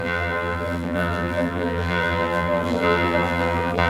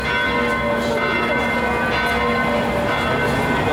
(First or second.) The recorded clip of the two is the second